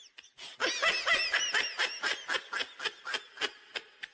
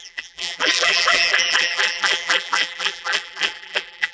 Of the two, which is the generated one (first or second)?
second